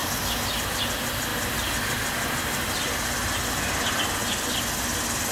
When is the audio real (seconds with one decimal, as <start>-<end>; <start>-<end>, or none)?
0.0-5.3